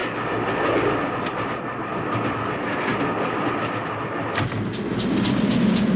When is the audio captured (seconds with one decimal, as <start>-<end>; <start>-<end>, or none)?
0.0-6.0